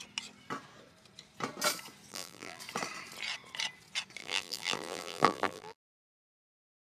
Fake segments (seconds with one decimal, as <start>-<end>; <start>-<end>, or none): 2.1-2.6; 4.2-6.9